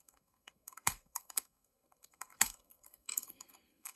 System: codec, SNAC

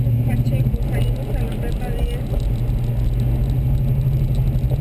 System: none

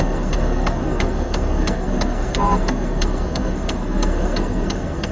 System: codec, SNAC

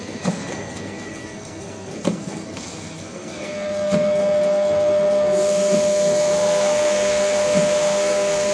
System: codec, SNAC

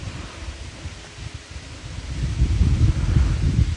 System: none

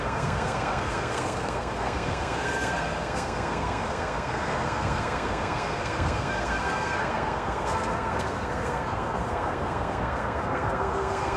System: codec, SNAC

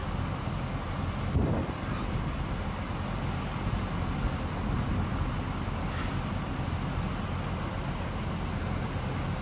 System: none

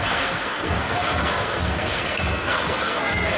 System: codec, SNAC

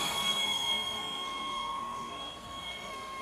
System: codec, SNAC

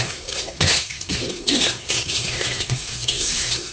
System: codec, SNAC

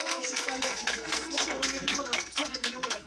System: codec, SNAC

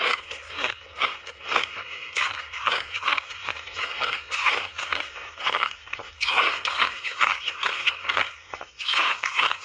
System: codec, SNAC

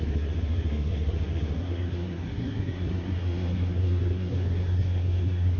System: codec, SNAC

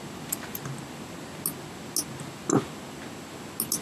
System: none